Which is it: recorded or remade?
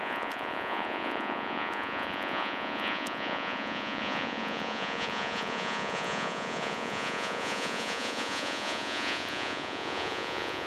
remade